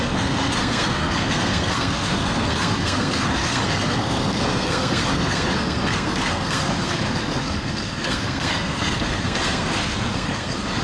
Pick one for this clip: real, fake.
fake